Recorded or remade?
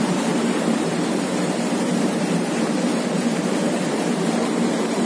remade